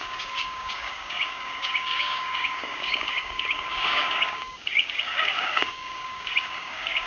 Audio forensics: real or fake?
fake